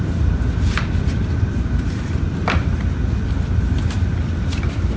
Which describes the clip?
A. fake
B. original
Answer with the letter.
B